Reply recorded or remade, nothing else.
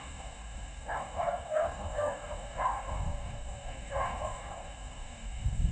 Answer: remade